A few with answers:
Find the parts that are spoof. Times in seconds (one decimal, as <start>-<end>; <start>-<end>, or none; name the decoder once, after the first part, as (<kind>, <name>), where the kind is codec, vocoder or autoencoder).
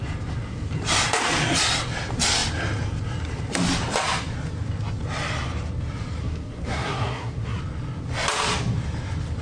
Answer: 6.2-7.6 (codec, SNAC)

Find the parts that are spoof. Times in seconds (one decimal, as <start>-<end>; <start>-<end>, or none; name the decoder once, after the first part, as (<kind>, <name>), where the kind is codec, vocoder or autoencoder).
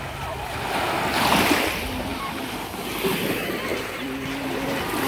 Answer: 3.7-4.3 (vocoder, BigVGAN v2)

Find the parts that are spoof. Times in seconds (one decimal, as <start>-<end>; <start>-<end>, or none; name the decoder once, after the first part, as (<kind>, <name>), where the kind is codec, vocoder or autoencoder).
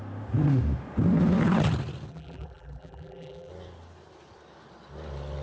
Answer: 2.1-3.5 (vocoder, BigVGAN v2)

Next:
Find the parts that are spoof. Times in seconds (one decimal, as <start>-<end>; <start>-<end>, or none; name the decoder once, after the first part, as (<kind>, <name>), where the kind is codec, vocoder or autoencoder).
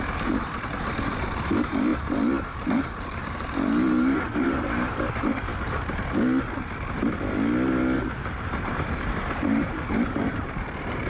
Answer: 0.0-5.5 (vocoder, BigVGAN v2); 8.3-11.1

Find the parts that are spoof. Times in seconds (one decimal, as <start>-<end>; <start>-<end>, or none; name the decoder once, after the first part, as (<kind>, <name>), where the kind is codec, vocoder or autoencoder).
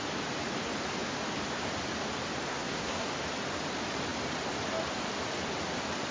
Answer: 2.5-3.1 (codec, SNAC)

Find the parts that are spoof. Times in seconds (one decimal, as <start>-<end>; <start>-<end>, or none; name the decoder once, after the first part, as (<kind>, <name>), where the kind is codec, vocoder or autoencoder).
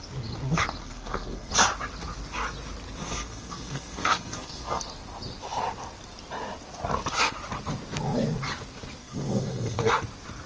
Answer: 0.8-1.5 (codec, SNAC); 3.0-4.8; 9.0-9.9